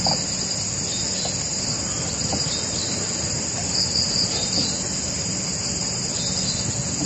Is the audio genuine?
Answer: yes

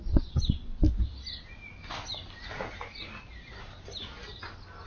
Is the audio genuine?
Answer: yes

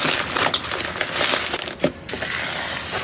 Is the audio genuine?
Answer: yes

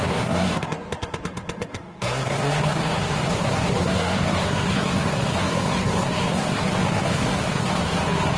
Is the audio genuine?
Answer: no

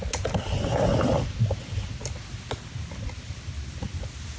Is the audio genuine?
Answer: yes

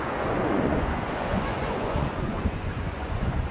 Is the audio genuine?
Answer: no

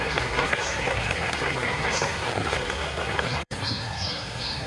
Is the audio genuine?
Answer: no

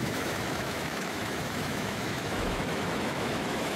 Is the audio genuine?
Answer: no